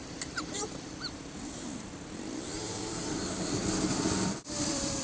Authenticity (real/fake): fake